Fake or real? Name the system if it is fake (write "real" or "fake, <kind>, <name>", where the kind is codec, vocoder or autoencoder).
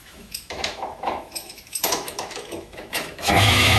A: fake, autoencoder, DAC-VAE